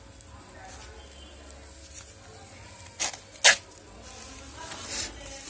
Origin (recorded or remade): recorded